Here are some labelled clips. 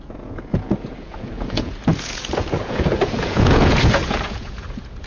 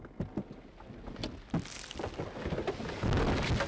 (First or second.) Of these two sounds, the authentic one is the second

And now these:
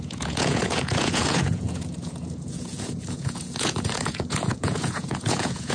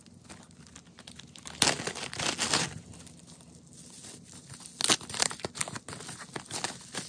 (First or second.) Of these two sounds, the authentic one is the second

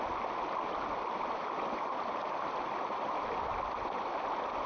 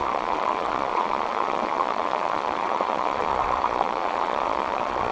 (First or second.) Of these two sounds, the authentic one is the first